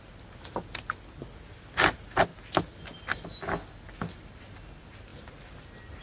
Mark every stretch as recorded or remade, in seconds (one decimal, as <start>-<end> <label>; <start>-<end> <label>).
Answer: 0.0-6.0 recorded